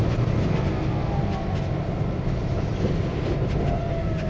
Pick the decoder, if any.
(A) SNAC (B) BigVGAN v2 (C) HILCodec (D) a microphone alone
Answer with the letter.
D